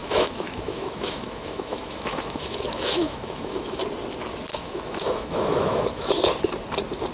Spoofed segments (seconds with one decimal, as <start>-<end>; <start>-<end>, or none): 0.0-3.8; 4.5-6.1